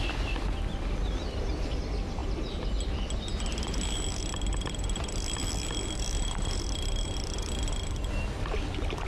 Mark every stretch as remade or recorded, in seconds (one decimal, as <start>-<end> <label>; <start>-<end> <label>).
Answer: 0.0-9.1 recorded